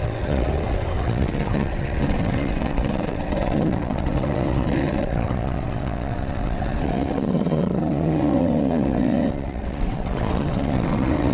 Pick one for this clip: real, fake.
fake